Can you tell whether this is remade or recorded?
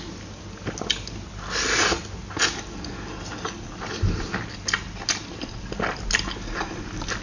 recorded